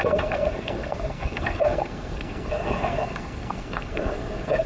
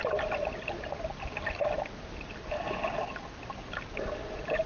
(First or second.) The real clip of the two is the second